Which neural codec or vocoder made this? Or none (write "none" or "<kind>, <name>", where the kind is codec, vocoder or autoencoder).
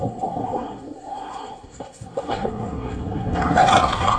codec, SNAC